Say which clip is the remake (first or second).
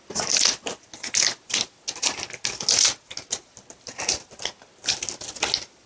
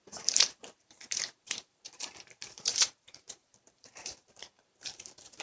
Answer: second